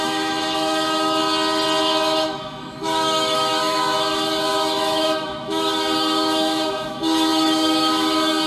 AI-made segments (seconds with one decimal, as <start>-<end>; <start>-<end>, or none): 0.0-1.2; 1.8-8.5